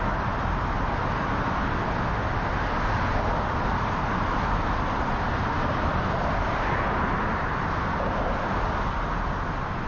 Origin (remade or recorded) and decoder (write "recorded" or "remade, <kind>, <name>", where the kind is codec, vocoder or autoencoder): recorded